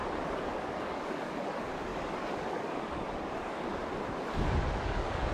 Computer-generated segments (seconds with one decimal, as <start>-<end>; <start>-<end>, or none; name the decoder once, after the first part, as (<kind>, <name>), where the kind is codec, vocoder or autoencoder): 0.6-3.8 (codec, DAC); 4.8-5.3